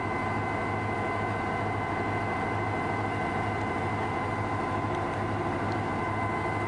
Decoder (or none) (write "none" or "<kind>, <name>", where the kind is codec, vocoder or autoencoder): none